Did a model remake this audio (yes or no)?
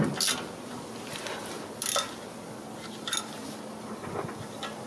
no